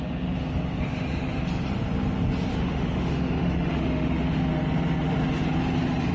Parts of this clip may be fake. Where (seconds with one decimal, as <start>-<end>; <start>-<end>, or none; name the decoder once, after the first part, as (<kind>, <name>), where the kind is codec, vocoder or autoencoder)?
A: 2.5-4.5 (autoencoder, DAC-VAE)